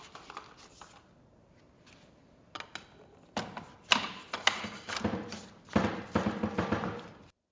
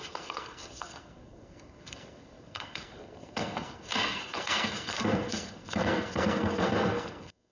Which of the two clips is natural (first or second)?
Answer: first